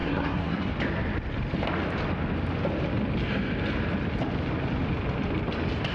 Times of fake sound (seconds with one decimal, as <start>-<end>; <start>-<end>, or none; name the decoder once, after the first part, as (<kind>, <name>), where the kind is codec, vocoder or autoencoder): 0.0-0.7 (codec, SNAC)